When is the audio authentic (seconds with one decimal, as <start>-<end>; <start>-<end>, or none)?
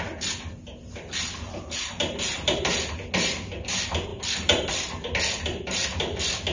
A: 0.0-6.5